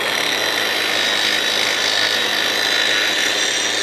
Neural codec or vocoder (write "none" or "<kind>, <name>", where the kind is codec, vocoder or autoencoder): none